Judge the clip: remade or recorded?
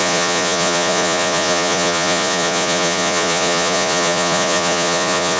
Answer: remade